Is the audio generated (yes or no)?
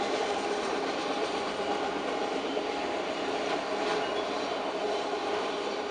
no